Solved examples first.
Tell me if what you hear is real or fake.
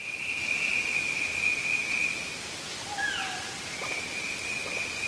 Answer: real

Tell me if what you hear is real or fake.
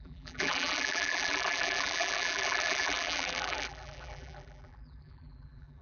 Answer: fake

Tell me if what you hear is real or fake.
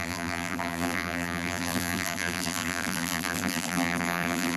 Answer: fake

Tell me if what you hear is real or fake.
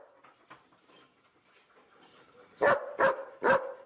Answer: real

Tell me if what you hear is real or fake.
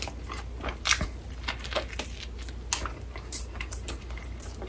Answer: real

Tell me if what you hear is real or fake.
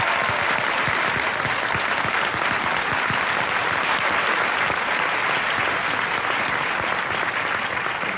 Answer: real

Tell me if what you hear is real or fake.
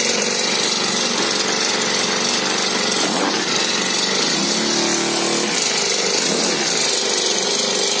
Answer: real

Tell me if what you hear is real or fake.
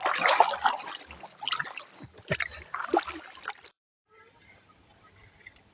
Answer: real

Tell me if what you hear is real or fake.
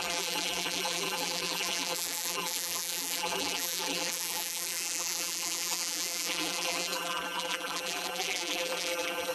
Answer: fake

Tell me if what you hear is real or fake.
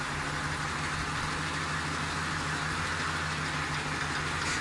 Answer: real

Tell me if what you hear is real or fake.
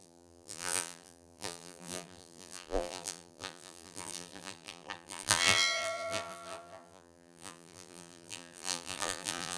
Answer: fake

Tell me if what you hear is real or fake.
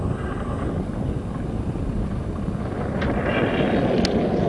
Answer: real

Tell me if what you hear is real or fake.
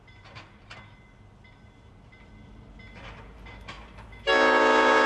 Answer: real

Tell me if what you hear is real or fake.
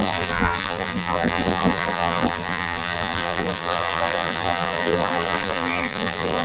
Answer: fake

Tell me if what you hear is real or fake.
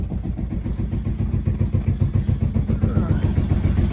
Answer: real